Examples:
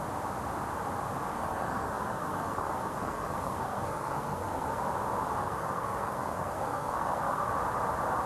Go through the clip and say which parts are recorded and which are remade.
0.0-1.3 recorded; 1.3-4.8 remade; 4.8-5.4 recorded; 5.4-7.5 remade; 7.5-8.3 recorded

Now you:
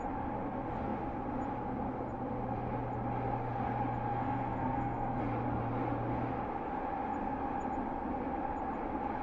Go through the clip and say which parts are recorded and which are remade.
0.0-4.1 recorded; 4.1-5.2 remade; 5.2-9.2 recorded

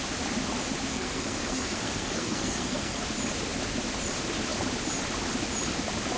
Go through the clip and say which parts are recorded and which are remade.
0.0-0.9 recorded; 0.9-3.0 remade; 3.0-6.2 recorded

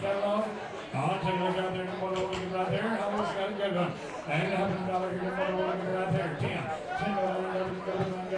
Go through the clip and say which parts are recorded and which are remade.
0.0-8.4 recorded

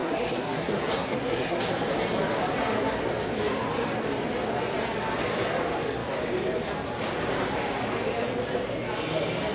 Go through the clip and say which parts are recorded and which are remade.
0.0-1.6 remade; 1.6-9.5 recorded